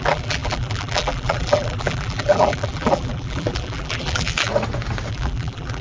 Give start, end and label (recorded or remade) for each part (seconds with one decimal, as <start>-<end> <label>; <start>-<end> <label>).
0.0-4.5 remade; 4.5-5.1 recorded; 5.1-5.8 remade